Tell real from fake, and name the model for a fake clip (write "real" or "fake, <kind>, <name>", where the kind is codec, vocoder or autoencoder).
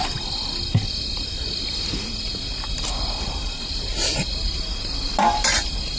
real